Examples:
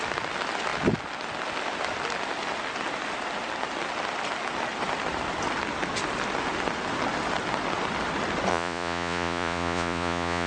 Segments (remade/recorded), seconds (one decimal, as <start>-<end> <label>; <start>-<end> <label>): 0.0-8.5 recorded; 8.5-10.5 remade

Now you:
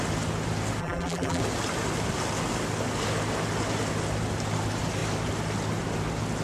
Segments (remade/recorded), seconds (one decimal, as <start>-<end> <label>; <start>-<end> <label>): 0.0-0.8 recorded; 0.8-1.4 remade; 1.4-6.4 recorded

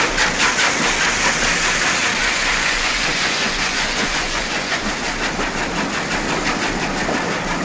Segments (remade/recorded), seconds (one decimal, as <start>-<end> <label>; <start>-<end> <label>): 0.0-2.2 recorded; 2.2-4.9 remade; 4.9-7.6 recorded

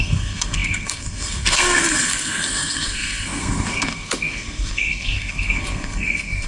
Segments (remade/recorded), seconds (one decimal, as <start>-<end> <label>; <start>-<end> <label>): 0.0-6.5 remade

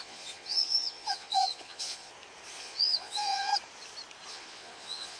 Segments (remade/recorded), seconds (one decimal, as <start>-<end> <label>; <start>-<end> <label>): 0.0-2.1 remade; 2.1-2.6 recorded; 2.6-3.5 remade; 3.5-4.3 recorded; 4.3-5.2 remade